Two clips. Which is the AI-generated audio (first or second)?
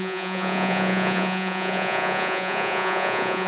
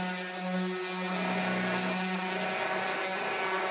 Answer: first